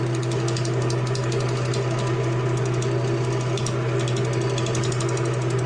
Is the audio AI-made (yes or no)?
no